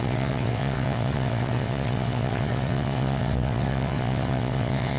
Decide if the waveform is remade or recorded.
remade